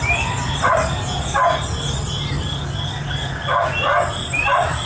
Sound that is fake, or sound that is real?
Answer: real